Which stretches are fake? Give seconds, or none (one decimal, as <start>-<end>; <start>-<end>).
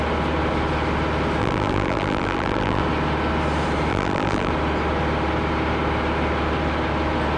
1.4-2.8; 3.9-4.5